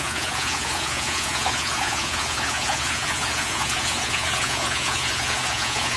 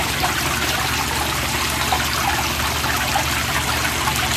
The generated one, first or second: first